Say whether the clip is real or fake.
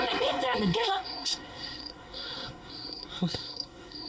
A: fake